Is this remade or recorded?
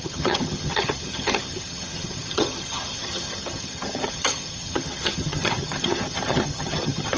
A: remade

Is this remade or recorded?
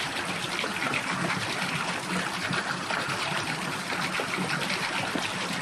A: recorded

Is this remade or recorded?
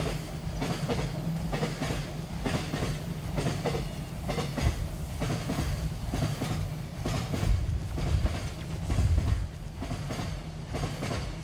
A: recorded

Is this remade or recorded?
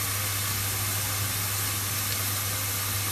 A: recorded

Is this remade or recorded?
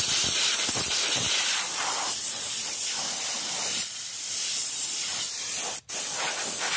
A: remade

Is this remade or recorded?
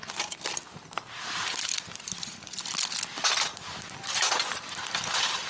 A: recorded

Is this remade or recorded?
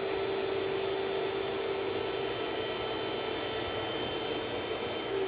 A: recorded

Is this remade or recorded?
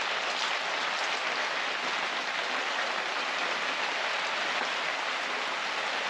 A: recorded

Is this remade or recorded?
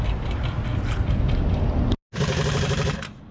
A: recorded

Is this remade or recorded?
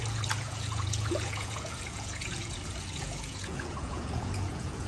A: remade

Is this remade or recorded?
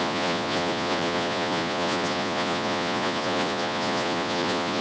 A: remade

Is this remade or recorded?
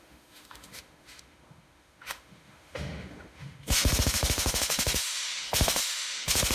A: remade